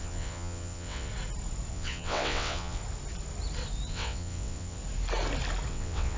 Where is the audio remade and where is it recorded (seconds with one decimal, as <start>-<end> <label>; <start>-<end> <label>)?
0.0-1.1 remade; 1.1-1.7 recorded; 1.7-2.8 remade; 2.8-3.9 recorded; 3.9-4.8 remade; 4.8-5.7 recorded; 5.7-6.2 remade

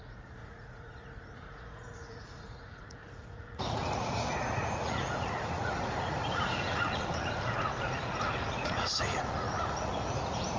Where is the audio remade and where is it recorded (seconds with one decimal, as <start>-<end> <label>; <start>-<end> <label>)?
0.0-10.6 remade

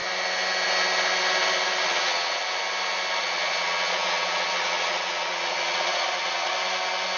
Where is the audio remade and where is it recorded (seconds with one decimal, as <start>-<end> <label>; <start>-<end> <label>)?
0.0-1.8 recorded; 1.8-2.4 remade; 2.4-3.2 recorded; 3.2-6.5 remade; 6.5-7.2 recorded